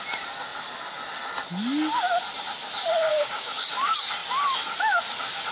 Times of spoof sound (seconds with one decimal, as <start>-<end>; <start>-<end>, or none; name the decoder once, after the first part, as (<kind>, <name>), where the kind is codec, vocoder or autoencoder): 3.1-3.7 (codec, DAC)